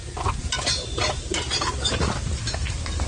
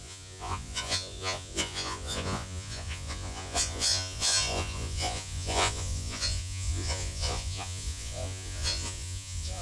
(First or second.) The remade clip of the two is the second